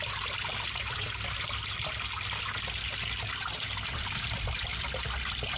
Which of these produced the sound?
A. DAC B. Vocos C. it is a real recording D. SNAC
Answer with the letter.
C